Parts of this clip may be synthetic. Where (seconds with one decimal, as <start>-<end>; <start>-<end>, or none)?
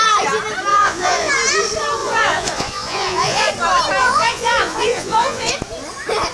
0.7-1.3; 2.0-3.5; 4.0-5.5